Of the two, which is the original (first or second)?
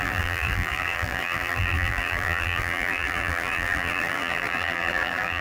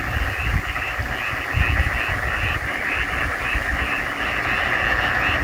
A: second